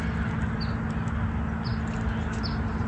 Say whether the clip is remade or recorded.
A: recorded